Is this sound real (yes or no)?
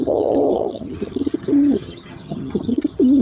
no